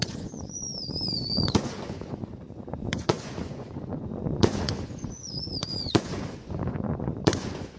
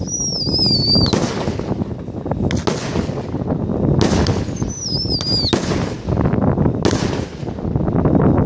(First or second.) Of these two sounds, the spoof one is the first